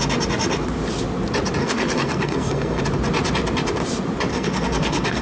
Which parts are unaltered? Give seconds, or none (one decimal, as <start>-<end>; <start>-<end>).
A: 0.0-1.6; 2.8-4.3